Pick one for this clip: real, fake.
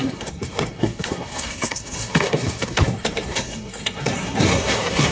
fake